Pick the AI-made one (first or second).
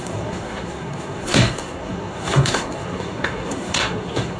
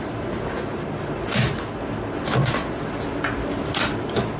first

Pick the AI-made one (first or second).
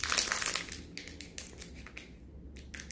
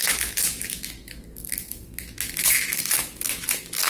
second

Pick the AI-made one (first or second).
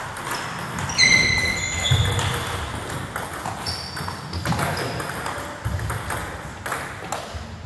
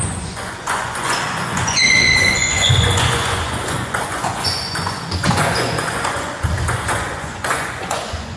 second